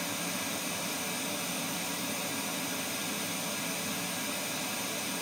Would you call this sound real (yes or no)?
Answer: yes